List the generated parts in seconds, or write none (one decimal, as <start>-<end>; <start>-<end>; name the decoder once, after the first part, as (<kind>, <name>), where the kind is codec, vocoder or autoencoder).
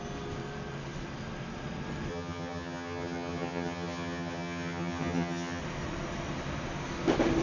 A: 2.1-5.6 (vocoder, HiFi-GAN)